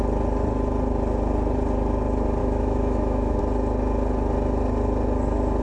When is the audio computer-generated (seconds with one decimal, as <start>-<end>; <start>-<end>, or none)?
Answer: 2.4-3.4